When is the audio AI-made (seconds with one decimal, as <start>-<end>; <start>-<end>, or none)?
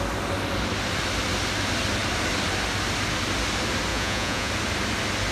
3.9-4.5